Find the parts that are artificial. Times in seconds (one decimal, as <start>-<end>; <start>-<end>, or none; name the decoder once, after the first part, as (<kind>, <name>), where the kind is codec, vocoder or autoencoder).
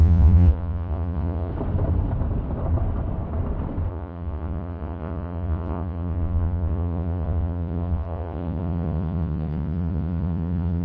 0.0-1.5 (vocoder, Vocos); 3.9-10.8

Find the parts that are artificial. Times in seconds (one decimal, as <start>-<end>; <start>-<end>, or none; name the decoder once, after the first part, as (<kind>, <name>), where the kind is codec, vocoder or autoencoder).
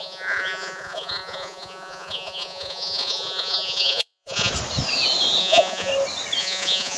0.0-4.5 (vocoder, Vocos); 5.4-5.9; 6.4-7.0